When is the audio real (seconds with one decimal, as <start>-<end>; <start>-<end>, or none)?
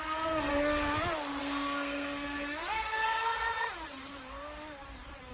0.5-1.4; 3.3-5.3